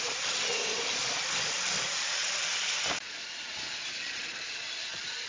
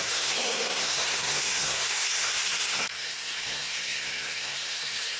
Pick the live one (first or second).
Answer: first